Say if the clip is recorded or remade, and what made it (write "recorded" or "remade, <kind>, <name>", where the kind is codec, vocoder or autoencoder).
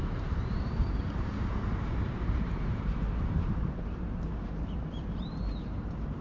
remade, vocoder, BigVGAN v2